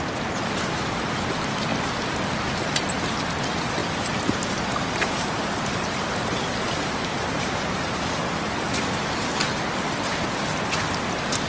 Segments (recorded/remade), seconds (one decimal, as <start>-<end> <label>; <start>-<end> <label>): 0.0-3.8 recorded; 3.8-9.0 remade; 9.0-11.5 recorded